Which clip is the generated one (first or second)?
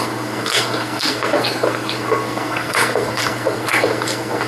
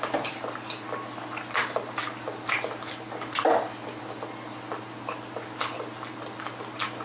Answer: first